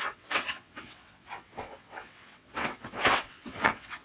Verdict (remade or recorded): remade